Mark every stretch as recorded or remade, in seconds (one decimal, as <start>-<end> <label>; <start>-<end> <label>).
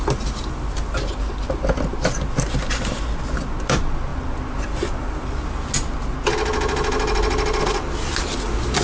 0.0-8.8 recorded